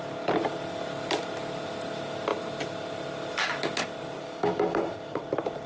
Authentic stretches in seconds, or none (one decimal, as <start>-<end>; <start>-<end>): 0.0-4.2; 5.2-5.7